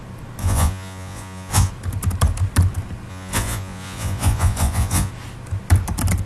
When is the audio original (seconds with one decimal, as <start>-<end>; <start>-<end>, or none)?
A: 0.0-0.4; 1.7-3.1; 5.1-6.3